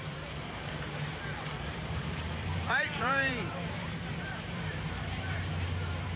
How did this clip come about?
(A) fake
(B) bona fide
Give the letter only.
A